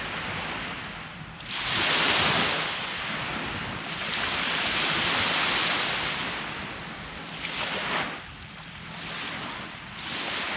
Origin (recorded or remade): recorded